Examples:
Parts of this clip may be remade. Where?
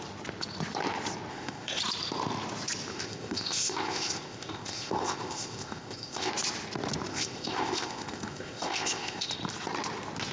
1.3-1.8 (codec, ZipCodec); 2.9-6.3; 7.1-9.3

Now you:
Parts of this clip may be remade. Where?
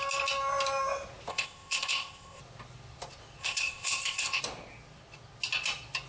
1.3-2.4 (codec, ZipCodec); 3.4-4.4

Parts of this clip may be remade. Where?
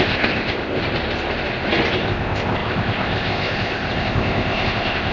0.0-0.8 (codec, ZipCodec); 1.9-5.1